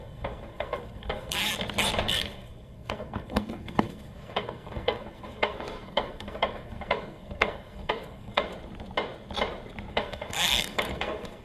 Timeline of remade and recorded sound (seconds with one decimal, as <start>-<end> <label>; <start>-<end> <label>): 0.0-1.4 remade; 1.4-2.0 recorded; 2.0-8.5 remade; 8.5-9.9 recorded; 9.9-11.4 remade